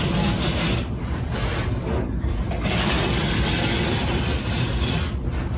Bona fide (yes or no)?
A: yes